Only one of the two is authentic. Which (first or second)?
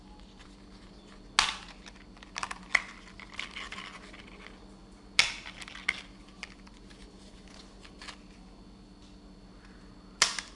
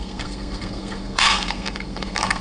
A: first